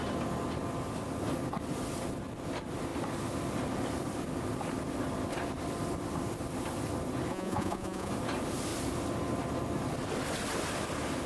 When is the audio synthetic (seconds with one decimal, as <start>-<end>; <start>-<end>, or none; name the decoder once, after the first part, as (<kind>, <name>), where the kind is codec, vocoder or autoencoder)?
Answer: 7.3-8.1 (vocoder, Vocos)